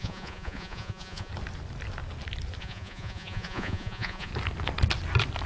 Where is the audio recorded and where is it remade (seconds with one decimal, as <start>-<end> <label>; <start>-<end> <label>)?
0.0-1.3 remade; 1.3-2.6 recorded; 2.6-4.3 remade; 4.3-5.5 recorded